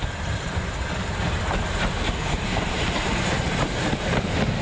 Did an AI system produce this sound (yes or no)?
no